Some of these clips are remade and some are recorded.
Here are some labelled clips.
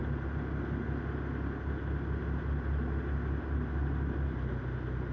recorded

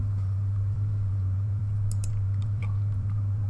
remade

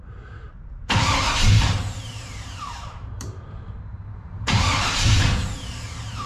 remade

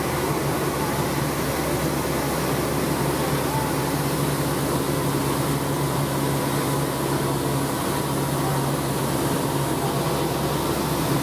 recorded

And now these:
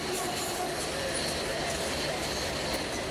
recorded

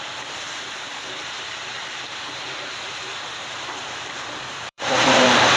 remade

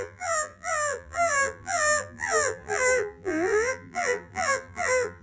remade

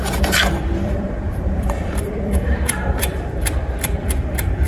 remade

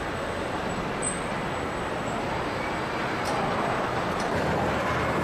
recorded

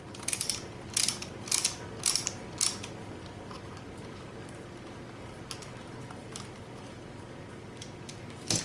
recorded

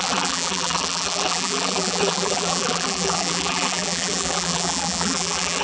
remade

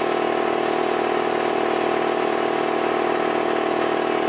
remade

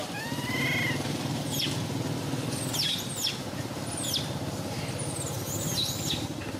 recorded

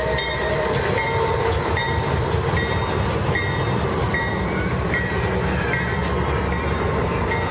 remade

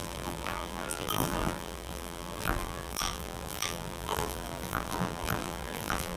remade